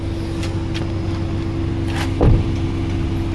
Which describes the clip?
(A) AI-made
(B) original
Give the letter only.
B